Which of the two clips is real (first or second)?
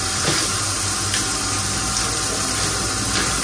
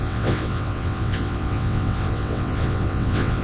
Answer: first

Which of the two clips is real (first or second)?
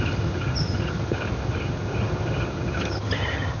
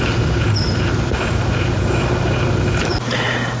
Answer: second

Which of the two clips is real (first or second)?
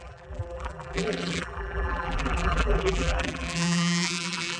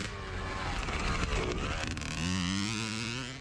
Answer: second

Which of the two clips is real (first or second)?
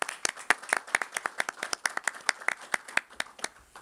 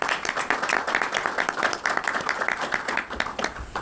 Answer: first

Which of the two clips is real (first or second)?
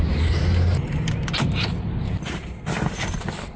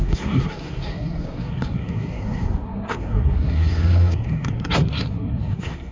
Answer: first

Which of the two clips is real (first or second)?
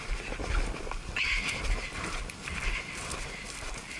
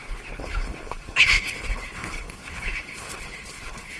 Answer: first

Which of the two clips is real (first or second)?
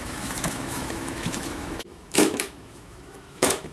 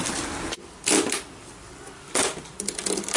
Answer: second